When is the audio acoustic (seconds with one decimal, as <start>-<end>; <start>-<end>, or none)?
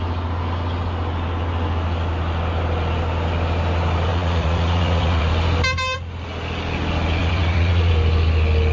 0.0-4.1; 5.3-7.2; 7.9-8.7